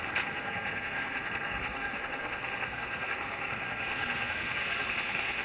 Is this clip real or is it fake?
fake